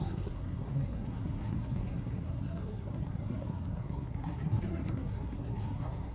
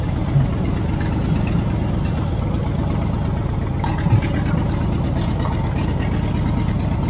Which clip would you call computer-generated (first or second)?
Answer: first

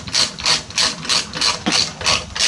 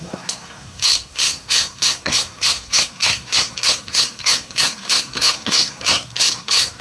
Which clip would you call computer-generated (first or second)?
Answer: second